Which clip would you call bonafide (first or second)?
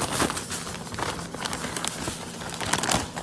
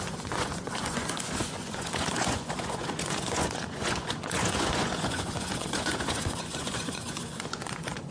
first